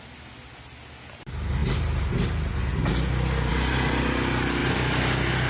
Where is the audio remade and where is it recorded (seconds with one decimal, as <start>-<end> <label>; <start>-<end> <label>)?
0.0-5.5 recorded